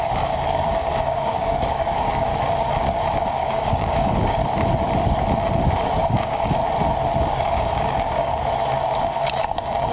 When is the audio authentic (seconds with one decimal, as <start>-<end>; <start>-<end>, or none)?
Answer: 2.3-3.3; 4.4-6.0; 6.6-7.3; 8.3-9.0